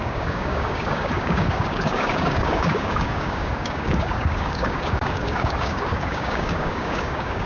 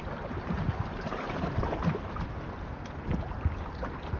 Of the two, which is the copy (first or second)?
first